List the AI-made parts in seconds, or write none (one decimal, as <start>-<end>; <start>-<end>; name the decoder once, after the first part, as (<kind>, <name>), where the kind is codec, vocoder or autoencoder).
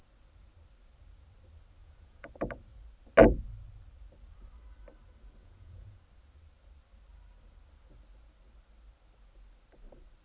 1.8-2.3 (vocoder, Vocos); 5.4-6.0